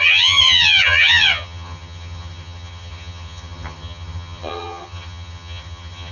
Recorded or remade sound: remade